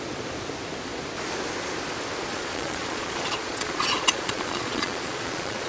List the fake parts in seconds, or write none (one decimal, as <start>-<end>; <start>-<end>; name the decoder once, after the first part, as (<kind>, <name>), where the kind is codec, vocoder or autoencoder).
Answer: 2.3-5.7 (vocoder, Vocos)